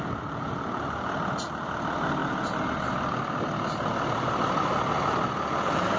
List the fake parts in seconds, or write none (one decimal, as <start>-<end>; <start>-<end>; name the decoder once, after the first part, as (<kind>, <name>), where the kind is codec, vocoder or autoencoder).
none